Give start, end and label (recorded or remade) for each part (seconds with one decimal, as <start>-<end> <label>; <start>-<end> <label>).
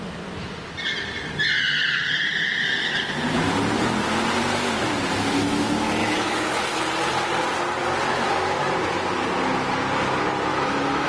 0.0-6.0 recorded; 6.0-6.8 remade; 6.8-10.5 recorded; 10.5-11.1 remade